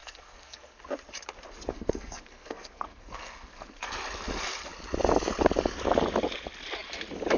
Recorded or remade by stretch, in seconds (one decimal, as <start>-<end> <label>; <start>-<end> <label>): 0.0-0.8 remade; 0.8-1.7 recorded; 1.7-3.9 remade; 3.9-7.4 recorded